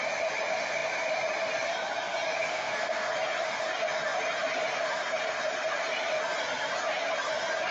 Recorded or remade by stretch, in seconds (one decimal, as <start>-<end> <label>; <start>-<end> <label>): 0.0-2.5 recorded; 2.5-3.1 remade; 3.1-7.7 recorded